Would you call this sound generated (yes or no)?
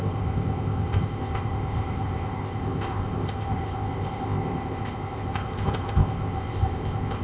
yes